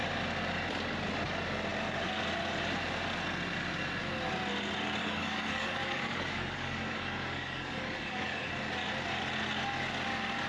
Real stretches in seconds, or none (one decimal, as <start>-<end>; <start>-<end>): 0.0-5.0; 8.5-10.5